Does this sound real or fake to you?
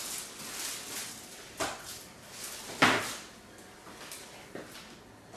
real